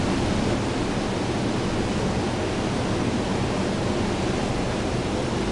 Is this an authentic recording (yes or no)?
yes